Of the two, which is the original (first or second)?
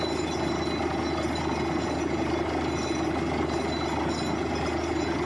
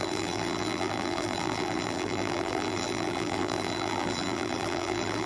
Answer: first